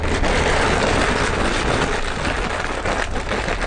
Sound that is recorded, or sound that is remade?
recorded